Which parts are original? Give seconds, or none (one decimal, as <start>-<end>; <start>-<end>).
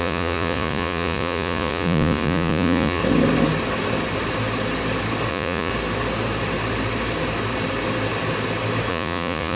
3.0-5.3; 5.7-8.9